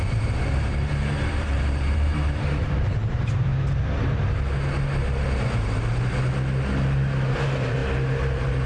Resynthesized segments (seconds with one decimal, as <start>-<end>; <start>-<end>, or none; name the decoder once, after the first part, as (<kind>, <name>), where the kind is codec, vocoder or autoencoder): 0.0-3.5 (vocoder, BigVGAN v2); 7.3-7.8